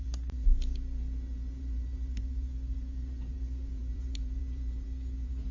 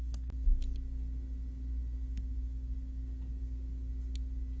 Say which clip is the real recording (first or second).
second